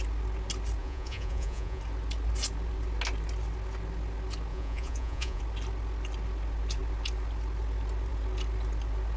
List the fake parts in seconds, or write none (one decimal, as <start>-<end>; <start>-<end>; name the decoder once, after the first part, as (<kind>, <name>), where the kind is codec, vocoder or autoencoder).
0.8-1.8 (vocoder, Vocos); 4.5-5.4